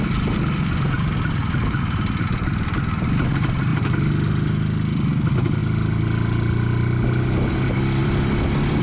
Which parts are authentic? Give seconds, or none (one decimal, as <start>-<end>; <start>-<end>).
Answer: 0.0-1.4; 2.7-8.0